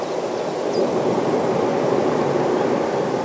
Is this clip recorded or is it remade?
recorded